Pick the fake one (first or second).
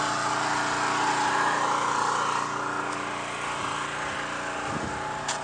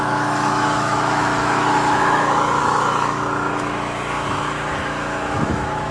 second